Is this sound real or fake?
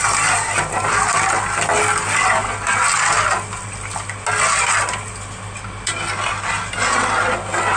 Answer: real